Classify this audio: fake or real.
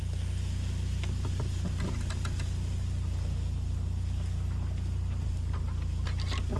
real